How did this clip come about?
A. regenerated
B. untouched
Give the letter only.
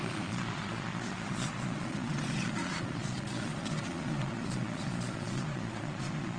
A